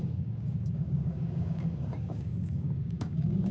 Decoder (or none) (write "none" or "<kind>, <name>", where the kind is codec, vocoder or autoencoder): codec, DAC